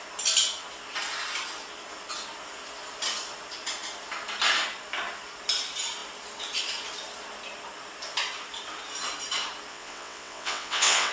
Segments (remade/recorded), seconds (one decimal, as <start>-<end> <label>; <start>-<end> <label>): 0.0-9.7 recorded; 9.7-11.1 remade